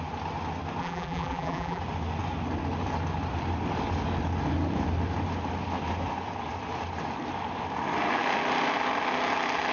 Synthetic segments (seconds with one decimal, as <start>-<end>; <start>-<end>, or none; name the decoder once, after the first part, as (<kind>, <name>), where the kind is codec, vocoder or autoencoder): 0.8-1.8 (vocoder, BigVGAN v2)